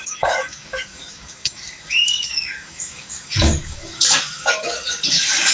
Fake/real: fake